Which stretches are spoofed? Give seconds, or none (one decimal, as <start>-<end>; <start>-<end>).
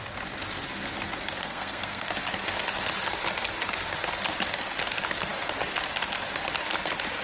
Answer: 1.4-2.1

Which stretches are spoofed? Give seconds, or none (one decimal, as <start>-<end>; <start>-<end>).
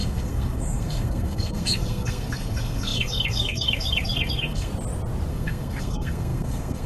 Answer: 0.0-4.7; 5.3-6.9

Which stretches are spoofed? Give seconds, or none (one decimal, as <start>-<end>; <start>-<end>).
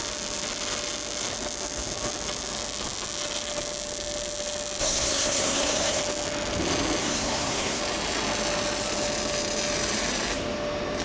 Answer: 4.8-6.0; 7.0-7.8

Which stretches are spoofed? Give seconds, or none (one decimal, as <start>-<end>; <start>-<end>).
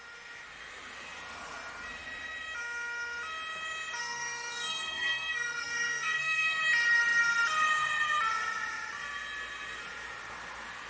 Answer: 4.0-6.6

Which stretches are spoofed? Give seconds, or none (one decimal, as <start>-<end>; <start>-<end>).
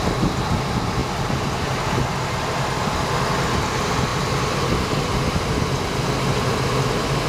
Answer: none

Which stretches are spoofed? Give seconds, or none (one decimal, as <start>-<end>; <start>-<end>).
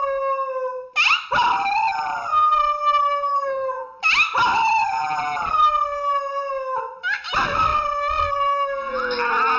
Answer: 3.3-4.0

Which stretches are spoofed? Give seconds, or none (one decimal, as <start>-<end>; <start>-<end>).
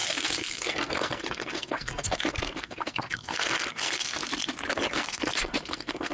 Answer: 0.0-4.2; 4.9-6.1